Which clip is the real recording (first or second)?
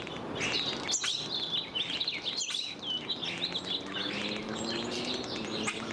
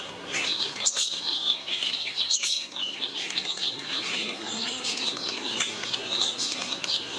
first